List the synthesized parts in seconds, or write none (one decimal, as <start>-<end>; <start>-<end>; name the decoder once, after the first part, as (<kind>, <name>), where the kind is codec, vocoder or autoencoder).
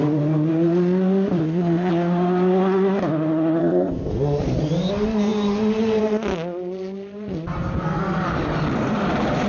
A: 1.4-1.9 (codec, ZipCodec); 3.6-4.1